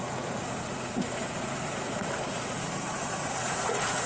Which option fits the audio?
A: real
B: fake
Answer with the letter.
B